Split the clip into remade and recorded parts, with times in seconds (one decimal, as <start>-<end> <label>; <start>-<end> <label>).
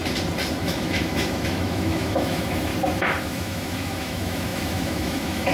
0.0-0.6 recorded; 0.6-2.7 remade; 2.7-3.2 recorded; 3.2-5.5 remade